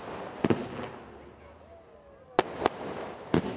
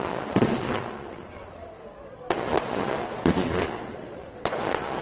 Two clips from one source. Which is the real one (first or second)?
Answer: first